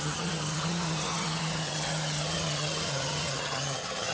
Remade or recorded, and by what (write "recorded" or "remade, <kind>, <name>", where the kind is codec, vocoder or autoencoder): remade, vocoder, HiFi-GAN